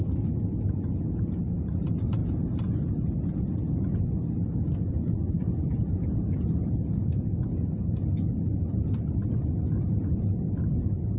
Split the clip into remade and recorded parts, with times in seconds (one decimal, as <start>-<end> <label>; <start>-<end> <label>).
0.0-6.9 recorded; 6.9-7.5 remade; 7.5-11.2 recorded